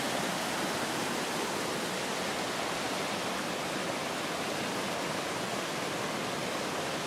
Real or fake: real